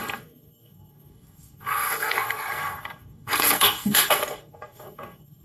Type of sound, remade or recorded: remade